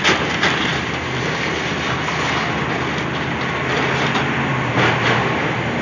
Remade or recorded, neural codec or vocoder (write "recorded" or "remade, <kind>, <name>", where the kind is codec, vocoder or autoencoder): recorded